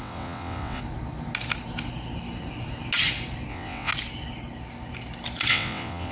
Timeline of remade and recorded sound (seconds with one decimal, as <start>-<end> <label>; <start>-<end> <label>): 0.0-0.8 remade; 0.8-3.5 recorded; 3.5-3.9 remade; 3.9-5.5 recorded; 5.5-6.1 remade